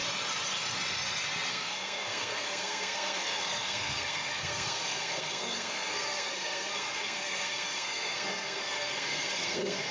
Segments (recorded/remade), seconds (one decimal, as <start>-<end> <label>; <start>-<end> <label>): 0.0-1.5 recorded; 1.5-9.9 remade